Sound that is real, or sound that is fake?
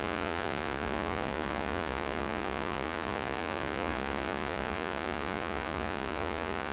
fake